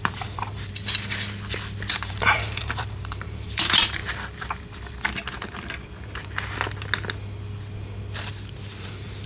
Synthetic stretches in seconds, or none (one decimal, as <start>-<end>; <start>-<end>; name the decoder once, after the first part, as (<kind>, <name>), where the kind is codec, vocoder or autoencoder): 0.0-0.7 (vocoder, BigVGAN v2); 1.9-4.0; 8.8-9.3